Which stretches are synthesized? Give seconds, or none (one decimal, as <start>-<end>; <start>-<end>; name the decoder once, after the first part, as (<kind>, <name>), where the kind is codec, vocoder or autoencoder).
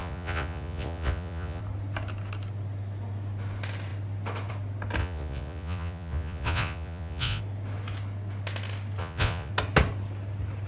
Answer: 0.0-1.6 (vocoder, Vocos); 5.0-7.4; 9.0-9.5